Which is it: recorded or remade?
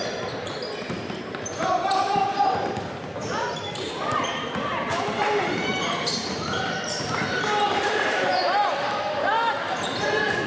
remade